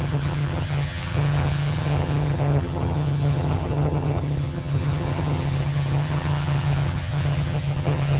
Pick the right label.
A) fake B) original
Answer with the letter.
A